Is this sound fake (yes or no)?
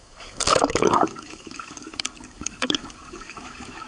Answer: yes